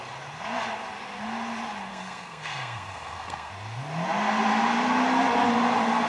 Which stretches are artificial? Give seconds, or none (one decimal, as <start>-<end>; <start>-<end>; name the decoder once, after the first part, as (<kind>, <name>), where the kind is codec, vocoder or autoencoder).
1.9-3.5 (codec, SNAC)